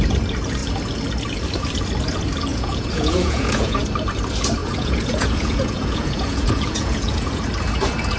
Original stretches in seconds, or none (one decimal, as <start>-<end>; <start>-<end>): 0.0-2.5; 3.8-4.6; 7.4-8.2